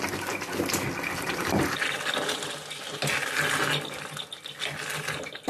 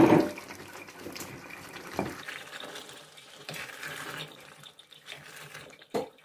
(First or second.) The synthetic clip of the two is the second